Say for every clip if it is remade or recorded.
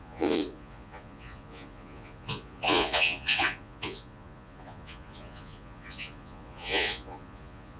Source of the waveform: remade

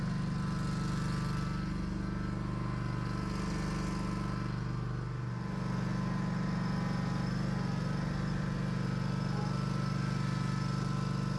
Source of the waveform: recorded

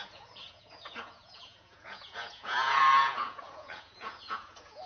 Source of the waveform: remade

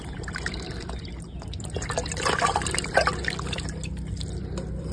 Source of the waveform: recorded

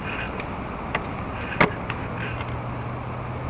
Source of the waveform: recorded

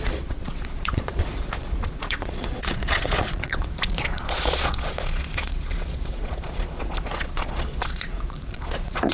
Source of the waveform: remade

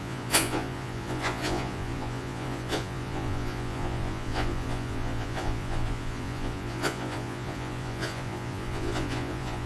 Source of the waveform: remade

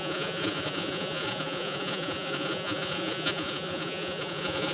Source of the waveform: remade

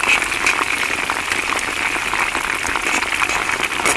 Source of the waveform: recorded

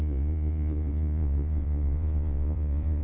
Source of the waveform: remade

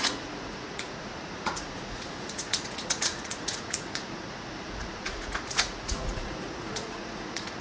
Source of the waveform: remade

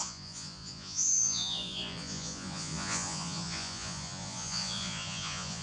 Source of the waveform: remade